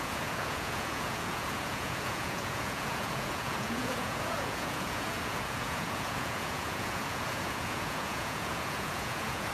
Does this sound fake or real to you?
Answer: fake